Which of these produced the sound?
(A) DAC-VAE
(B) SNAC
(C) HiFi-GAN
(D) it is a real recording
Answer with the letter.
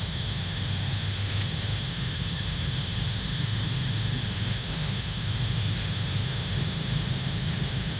A